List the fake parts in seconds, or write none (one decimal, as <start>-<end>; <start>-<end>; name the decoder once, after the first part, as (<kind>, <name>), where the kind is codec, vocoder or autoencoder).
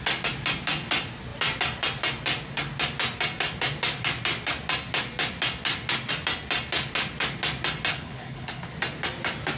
7.9-8.7 (codec, HILCodec)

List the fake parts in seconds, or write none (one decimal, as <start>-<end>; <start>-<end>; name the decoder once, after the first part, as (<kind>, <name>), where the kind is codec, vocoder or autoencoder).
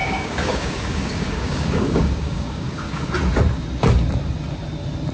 0.0-3.1 (codec, DAC)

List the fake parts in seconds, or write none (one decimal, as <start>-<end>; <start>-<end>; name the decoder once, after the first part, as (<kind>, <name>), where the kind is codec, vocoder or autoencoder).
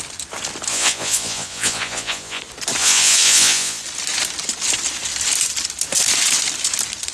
0.7-2.4 (vocoder, Vocos); 2.8-3.8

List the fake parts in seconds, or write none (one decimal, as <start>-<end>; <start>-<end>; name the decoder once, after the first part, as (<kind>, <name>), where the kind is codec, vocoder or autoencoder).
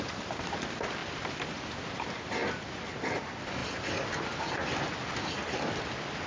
1.0-1.6 (vocoder, BigVGAN v2); 2.4-3.0